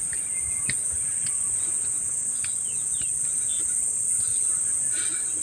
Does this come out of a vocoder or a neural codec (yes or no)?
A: no